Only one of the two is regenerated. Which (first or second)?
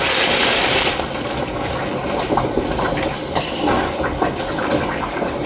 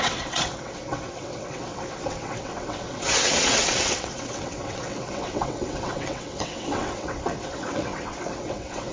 second